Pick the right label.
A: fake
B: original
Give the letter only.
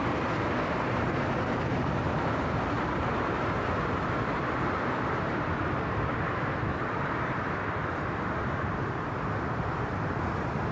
A